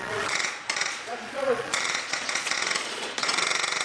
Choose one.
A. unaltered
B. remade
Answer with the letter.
B